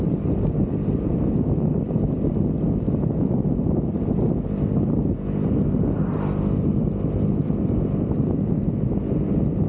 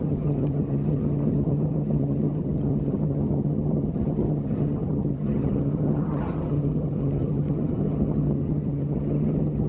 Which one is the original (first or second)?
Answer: first